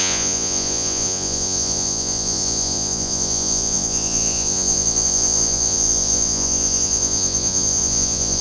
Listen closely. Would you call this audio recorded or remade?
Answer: remade